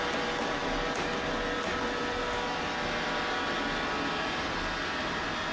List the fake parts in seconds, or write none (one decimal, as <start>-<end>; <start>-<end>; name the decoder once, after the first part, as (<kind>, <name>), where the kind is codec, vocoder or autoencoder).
none